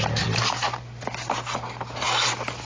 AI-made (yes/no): no